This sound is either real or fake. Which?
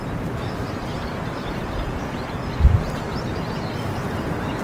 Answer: real